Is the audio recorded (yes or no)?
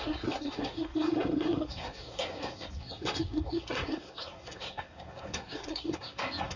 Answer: no